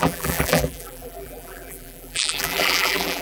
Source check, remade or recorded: remade